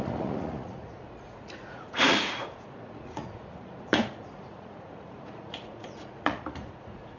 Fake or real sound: fake